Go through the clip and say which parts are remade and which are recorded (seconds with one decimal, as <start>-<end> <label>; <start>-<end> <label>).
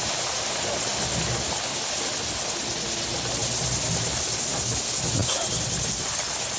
0.0-6.6 recorded